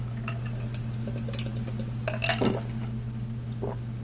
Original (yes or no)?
yes